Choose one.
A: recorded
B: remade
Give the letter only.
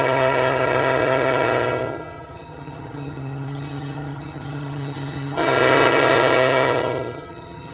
B